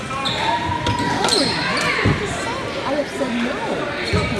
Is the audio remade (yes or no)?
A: no